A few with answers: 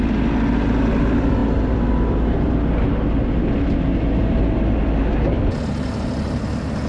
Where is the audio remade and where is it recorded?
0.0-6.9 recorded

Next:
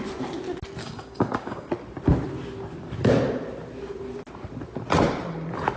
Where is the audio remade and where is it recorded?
0.0-0.8 recorded; 0.8-1.7 remade; 1.7-5.8 recorded

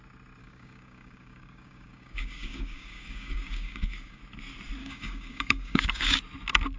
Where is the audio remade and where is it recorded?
0.0-0.4 recorded; 0.4-4.2 remade; 4.2-4.8 recorded; 4.8-6.2 remade; 6.2-6.8 recorded

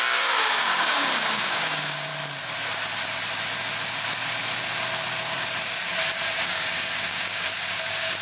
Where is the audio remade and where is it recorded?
0.0-2.1 remade; 2.1-6.4 recorded; 6.4-8.2 remade